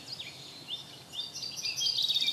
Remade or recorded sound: recorded